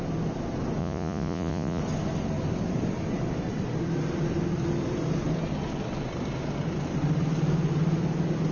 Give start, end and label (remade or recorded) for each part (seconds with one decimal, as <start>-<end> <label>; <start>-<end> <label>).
0.0-0.8 recorded; 0.8-1.8 remade; 1.8-8.5 recorded

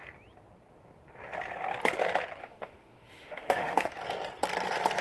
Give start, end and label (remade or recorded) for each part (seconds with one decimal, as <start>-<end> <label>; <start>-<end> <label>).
0.0-2.4 recorded; 2.4-3.9 remade; 3.9-5.0 recorded

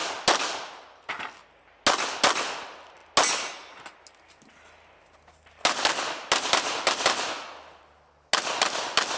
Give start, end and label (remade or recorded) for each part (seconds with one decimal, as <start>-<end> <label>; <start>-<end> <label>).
0.0-9.2 recorded

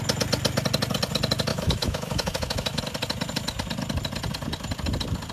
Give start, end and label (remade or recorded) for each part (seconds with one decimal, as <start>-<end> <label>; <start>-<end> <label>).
0.0-1.5 recorded; 1.5-2.8 remade; 2.8-5.3 recorded